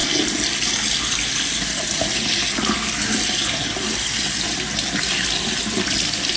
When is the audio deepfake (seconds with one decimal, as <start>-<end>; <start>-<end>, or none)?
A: none